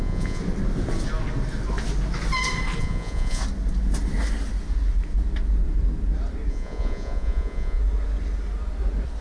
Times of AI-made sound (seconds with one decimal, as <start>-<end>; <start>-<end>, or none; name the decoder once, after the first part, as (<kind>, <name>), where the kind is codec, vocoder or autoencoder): 0.0-0.4 (vocoder, Vocos); 2.8-3.4; 6.5-7.8